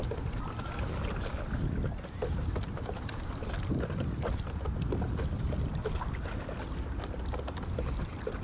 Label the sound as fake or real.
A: real